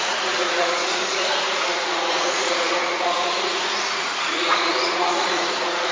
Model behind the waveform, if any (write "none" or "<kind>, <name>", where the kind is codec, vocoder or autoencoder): vocoder, Vocos